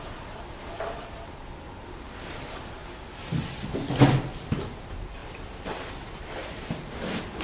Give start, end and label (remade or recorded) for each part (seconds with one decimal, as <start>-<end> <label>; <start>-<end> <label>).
0.0-7.4 remade